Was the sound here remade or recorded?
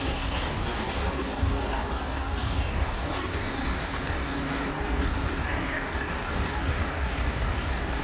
remade